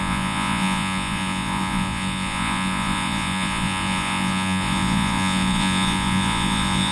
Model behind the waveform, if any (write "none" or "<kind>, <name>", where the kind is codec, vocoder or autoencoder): vocoder, Vocos